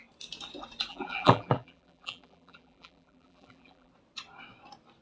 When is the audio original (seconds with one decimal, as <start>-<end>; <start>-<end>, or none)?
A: 0.0-0.9; 3.9-5.0